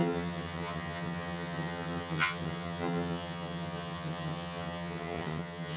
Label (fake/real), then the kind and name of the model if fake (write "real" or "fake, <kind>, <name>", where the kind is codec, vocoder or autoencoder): fake, vocoder, HiFi-GAN